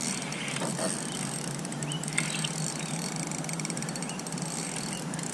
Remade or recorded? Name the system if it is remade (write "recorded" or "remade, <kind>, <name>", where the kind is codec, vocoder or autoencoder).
recorded